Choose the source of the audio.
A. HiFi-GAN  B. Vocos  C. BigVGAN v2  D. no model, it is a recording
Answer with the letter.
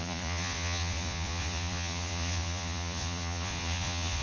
B